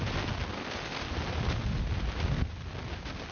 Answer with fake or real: real